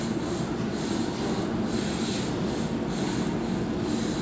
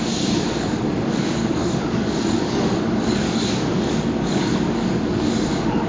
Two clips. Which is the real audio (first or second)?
first